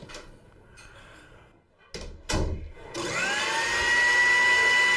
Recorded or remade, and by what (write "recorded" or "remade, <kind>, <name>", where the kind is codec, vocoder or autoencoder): recorded